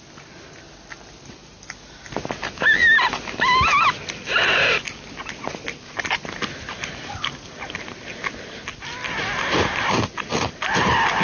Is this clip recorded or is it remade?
recorded